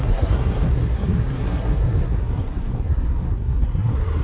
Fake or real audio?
fake